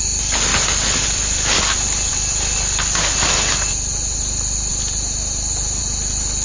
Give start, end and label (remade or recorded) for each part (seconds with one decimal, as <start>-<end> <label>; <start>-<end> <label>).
0.0-6.4 recorded